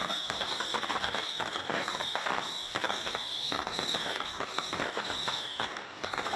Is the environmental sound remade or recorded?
remade